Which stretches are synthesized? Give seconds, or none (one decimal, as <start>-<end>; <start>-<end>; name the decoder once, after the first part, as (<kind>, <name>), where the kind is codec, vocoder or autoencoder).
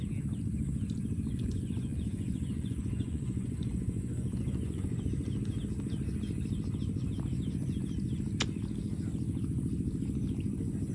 1.3-5.0 (vocoder, Vocos)